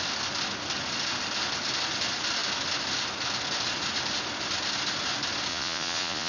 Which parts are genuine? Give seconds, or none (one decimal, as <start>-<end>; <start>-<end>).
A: 0.0-5.5